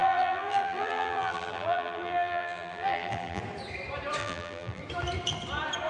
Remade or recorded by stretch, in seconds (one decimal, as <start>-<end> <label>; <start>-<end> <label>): 0.0-3.4 remade; 3.4-4.2 recorded; 4.2-4.8 remade; 4.8-5.9 recorded